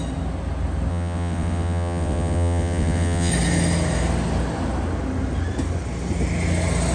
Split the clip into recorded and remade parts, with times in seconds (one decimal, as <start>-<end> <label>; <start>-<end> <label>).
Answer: 0.0-0.9 recorded; 0.9-3.3 remade; 3.3-6.9 recorded